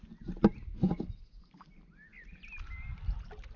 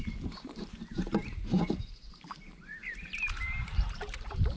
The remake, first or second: second